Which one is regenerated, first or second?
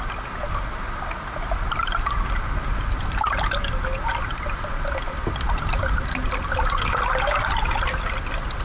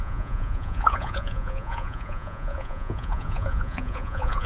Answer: second